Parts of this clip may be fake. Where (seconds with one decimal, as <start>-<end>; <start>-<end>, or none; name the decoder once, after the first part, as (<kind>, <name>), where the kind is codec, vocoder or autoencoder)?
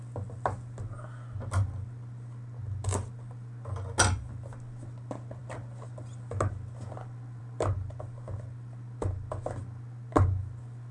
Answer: none